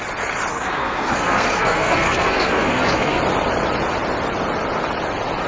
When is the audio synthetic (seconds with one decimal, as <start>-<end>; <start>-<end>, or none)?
0.5-3.2